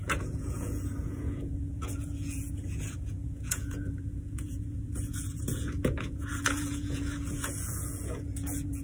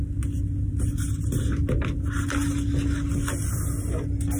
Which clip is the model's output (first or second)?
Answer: first